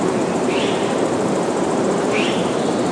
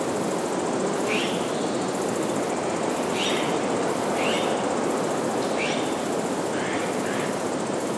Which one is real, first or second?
second